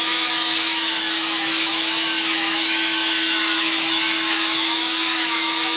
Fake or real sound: fake